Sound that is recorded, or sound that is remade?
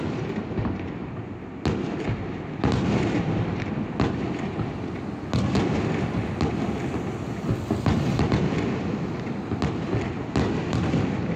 recorded